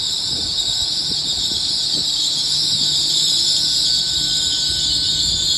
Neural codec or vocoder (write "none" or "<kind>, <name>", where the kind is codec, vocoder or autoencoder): none